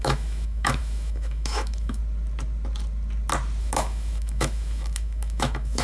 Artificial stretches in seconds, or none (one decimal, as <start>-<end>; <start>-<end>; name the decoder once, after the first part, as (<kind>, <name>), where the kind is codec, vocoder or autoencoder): 0.0-2.0 (autoencoder, DAC-VAE); 3.6-5.8